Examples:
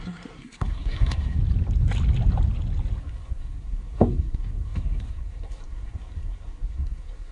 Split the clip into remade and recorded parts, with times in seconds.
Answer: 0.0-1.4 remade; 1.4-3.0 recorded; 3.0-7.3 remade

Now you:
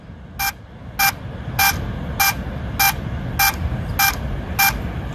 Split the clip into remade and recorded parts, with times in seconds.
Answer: 0.0-5.1 recorded

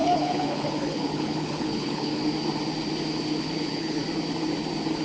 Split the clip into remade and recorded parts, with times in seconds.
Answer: 0.0-2.2 remade; 2.2-3.4 recorded; 3.4-4.0 remade; 4.0-5.0 recorded

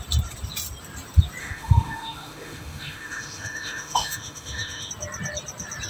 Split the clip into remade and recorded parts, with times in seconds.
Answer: 0.0-1.4 recorded; 1.4-4.9 remade; 4.9-5.9 recorded

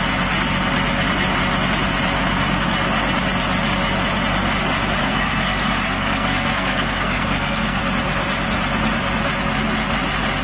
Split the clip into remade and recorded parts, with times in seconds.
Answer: 0.0-5.0 recorded; 5.0-7.8 remade; 7.8-10.4 recorded

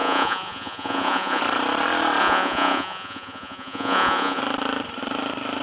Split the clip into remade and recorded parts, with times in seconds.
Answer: 0.0-1.4 remade; 1.4-2.2 recorded; 2.2-4.4 remade; 4.4-5.6 recorded

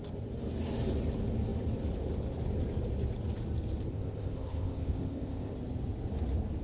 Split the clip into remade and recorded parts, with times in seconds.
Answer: 0.0-3.9 recorded; 3.9-5.5 remade; 5.5-6.6 recorded

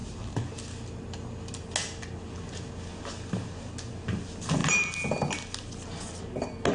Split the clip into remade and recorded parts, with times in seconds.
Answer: 0.0-6.7 recorded